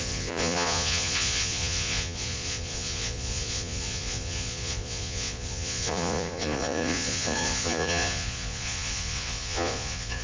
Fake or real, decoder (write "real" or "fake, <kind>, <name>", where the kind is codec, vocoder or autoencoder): fake, vocoder, Vocos